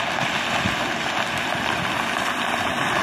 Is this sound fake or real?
real